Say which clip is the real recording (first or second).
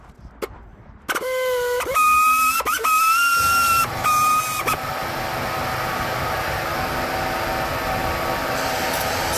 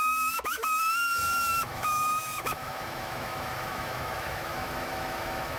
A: first